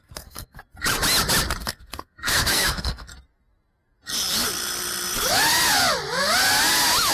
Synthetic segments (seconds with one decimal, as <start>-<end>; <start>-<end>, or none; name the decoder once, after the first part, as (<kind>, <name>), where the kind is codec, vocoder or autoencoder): 0.0-0.6 (codec, SNAC); 1.6-3.1